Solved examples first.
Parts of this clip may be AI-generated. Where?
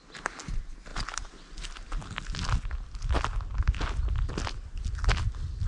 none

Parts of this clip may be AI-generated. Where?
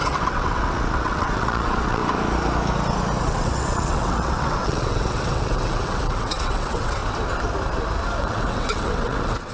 0.0-2.0 (vocoder, WaveNeXt); 3.2-7.0; 8.2-9.5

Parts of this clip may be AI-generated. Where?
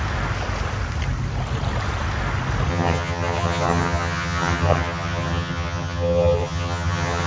2.7-7.3 (vocoder, HiFi-GAN)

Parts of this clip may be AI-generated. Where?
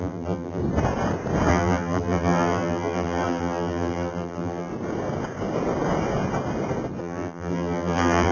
0.0-0.6 (vocoder, BigVGAN v2); 1.5-4.7; 7.0-8.3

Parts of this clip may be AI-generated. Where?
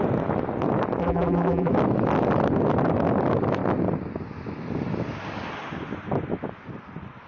1.0-1.7 (vocoder, BigVGAN v2)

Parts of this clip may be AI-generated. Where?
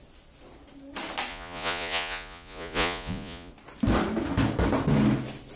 1.3-3.5 (vocoder, Vocos)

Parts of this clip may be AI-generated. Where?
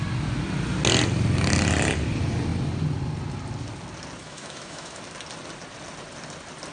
4.2-5.0 (autoencoder, DAC-VAE)